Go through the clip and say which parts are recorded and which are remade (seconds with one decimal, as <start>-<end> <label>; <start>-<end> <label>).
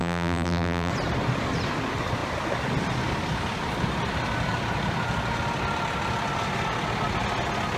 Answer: 0.0-0.9 remade; 0.9-7.8 recorded